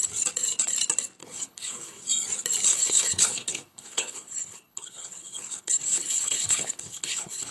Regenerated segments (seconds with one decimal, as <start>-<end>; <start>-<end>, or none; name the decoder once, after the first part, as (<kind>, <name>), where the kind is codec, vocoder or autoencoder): 1.2-2.0 (codec, HILCodec); 2.7-7.5